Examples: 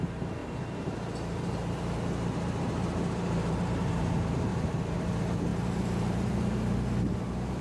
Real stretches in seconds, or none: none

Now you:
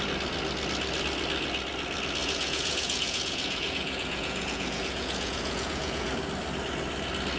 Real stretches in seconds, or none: 0.0-2.2; 6.1-7.4

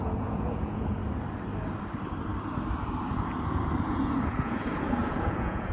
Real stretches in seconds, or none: 1.0-3.8

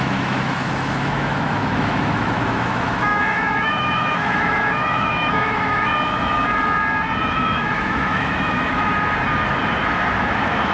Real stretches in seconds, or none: 5.9-7.2; 8.9-10.2

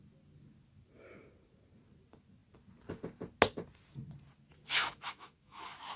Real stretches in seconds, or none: 0.0-4.8

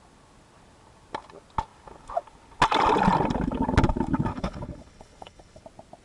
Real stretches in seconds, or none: 0.0-4.3; 5.6-6.0

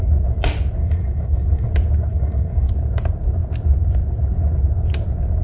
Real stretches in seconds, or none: 0.0-0.8; 1.7-2.1; 2.7-5.4

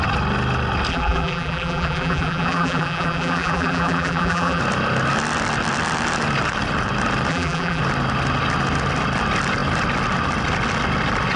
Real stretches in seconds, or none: 0.0-0.9; 4.6-7.3; 7.8-11.4